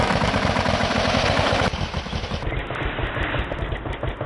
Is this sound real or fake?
real